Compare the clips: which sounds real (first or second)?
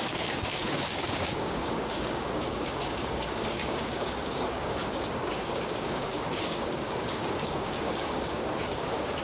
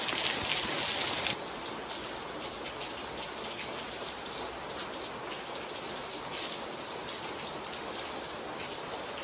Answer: second